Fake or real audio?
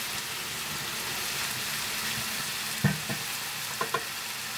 real